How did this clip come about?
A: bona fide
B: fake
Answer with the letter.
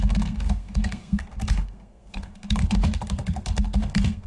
B